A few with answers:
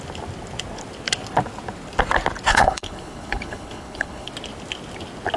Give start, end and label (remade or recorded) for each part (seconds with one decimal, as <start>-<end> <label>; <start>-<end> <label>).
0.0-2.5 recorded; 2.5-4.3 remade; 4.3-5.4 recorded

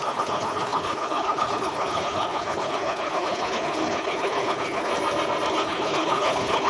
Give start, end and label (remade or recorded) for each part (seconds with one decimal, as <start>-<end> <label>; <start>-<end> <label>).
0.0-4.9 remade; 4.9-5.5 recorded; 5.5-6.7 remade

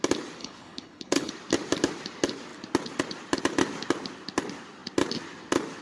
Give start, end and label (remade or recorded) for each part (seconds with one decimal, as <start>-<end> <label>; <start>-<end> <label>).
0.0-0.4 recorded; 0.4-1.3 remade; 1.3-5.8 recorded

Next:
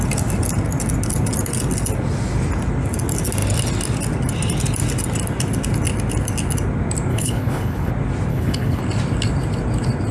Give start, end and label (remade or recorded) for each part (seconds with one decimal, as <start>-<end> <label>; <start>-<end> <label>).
0.0-7.1 recorded; 7.1-7.9 remade; 7.9-8.3 recorded; 8.3-8.8 remade; 8.8-10.1 recorded

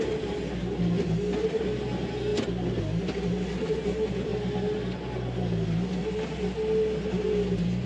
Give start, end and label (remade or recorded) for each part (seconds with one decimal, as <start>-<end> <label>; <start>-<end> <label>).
0.0-7.9 recorded